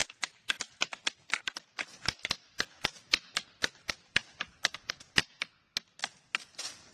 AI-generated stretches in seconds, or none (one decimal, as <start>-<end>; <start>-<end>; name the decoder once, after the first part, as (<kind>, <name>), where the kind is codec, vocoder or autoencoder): 0.7-6.9 (vocoder, BigVGAN v2)